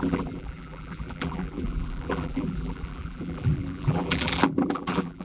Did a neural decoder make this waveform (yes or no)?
yes